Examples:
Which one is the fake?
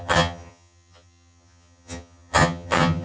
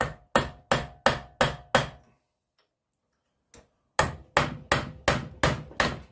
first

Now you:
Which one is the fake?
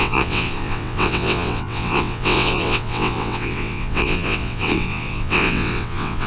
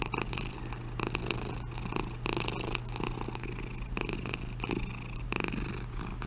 first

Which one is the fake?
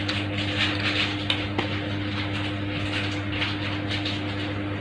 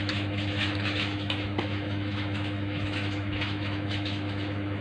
second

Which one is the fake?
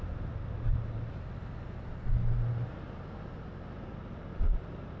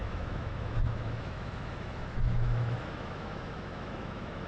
second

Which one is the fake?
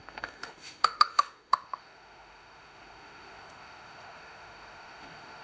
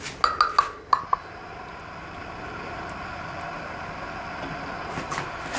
first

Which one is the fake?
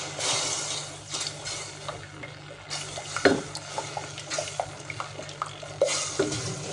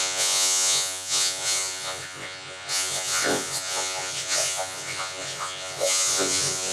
second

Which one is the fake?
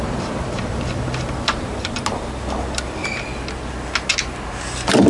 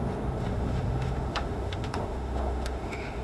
second